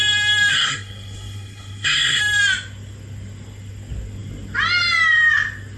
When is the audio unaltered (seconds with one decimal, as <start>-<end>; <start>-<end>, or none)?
0.0-0.5; 2.2-5.8